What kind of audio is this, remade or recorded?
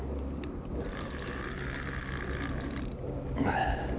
recorded